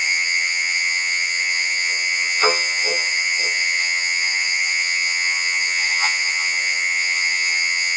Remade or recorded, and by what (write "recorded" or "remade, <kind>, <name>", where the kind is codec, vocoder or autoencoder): remade, vocoder, HiFi-GAN